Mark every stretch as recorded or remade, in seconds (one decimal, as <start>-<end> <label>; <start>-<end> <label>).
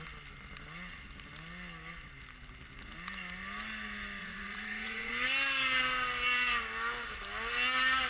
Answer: 0.0-4.2 recorded; 4.2-5.1 remade; 5.1-8.1 recorded